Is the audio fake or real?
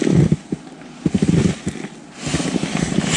real